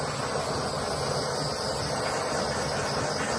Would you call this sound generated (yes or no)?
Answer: no